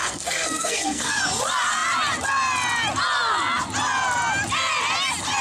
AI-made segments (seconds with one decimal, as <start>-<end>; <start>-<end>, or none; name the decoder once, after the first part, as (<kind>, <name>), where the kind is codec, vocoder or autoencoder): 0.0-1.2 (codec, SNAC)